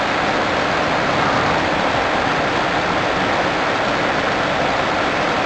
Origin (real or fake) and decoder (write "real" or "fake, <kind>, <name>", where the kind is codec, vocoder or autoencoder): real